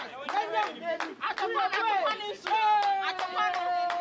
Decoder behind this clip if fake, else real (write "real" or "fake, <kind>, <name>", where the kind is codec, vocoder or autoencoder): real